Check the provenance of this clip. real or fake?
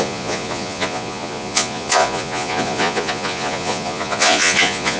fake